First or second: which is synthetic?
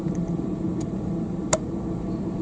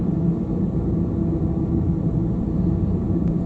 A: first